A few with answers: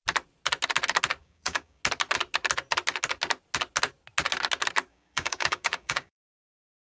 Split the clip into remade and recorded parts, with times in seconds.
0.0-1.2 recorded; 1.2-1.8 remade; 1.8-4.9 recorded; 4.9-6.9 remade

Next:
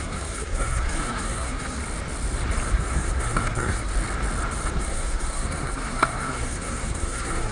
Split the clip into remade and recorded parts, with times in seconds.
0.0-1.8 remade; 1.8-2.7 recorded; 2.7-3.9 remade; 3.9-4.8 recorded; 4.8-7.5 remade

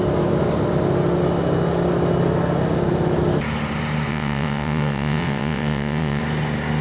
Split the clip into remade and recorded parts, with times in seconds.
0.0-4.1 recorded; 4.1-6.2 remade; 6.2-6.8 recorded

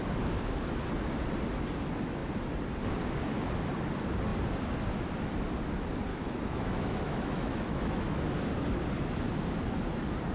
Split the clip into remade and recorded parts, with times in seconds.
0.0-6.1 recorded; 6.1-8.3 remade; 8.3-10.3 recorded